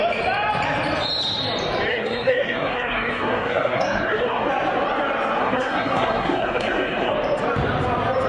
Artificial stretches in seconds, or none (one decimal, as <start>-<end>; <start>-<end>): 1.9-4.5; 5.4-7.1